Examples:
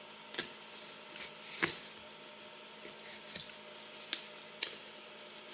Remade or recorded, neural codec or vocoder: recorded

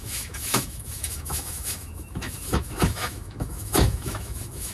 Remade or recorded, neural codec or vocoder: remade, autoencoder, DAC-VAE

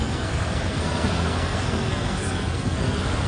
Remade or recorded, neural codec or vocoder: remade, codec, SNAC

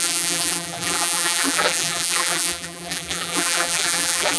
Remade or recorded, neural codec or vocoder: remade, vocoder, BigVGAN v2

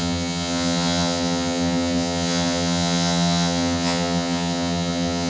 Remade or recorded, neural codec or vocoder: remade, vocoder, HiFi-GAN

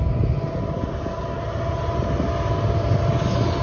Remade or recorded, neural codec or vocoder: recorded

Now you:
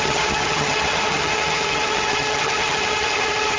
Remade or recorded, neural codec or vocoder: remade, vocoder, HiFi-GAN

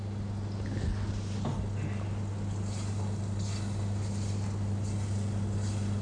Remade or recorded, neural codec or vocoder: recorded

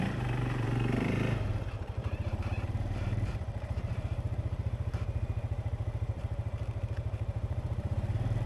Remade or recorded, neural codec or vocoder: remade, vocoder, BigVGAN v2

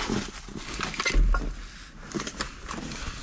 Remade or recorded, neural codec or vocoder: recorded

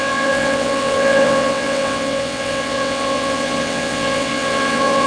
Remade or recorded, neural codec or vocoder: remade, vocoder, WaveNeXt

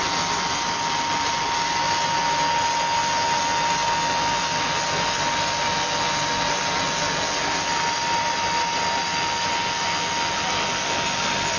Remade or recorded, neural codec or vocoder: recorded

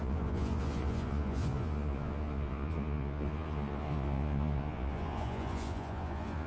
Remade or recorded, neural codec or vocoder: remade, vocoder, Vocos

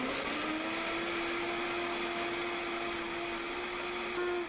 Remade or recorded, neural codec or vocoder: recorded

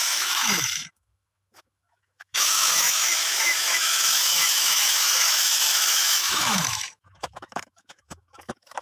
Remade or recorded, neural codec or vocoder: remade, autoencoder, DAC-VAE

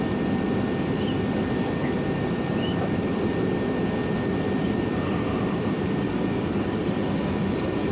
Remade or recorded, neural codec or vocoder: recorded